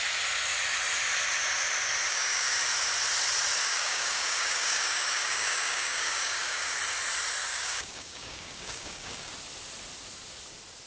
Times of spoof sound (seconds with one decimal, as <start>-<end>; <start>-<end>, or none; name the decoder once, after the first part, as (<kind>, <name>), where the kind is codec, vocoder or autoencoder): 2.1-2.6 (codec, DAC); 3.6-6.7; 7.5-9.3